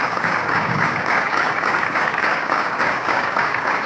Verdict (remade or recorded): remade